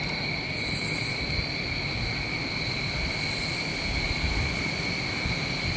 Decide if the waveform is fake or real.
real